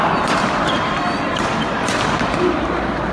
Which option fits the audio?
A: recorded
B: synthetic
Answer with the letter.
B